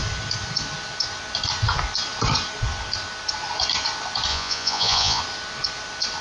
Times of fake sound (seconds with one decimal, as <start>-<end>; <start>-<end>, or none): 4.3-5.2